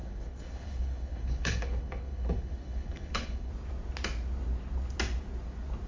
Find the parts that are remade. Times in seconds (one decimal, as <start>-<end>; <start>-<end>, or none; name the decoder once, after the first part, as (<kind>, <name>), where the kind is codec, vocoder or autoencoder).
0.0-3.5 (codec, HILCodec)